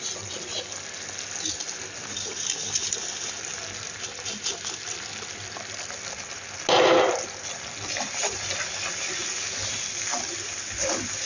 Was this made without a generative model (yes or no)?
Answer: yes